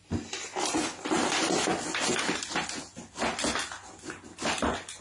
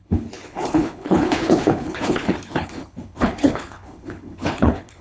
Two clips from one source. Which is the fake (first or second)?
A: second